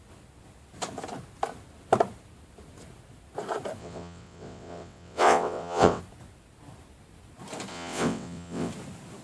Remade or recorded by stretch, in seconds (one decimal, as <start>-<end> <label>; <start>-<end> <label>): 0.0-3.8 recorded; 3.8-6.0 remade; 6.0-7.7 recorded; 7.7-8.7 remade; 8.7-9.2 recorded